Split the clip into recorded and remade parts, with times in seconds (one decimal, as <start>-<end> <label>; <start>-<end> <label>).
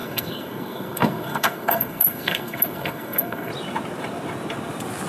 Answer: 0.0-3.5 remade; 3.5-5.1 recorded